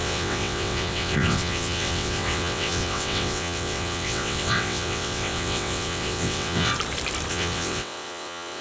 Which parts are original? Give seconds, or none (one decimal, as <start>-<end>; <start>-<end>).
6.7-7.3